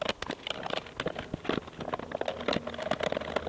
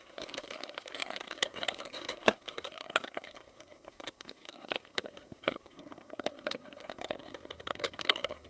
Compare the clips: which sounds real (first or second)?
first